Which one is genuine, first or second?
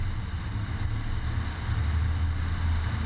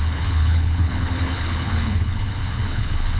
first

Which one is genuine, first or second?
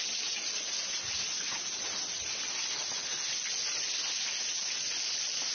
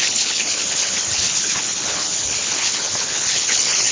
first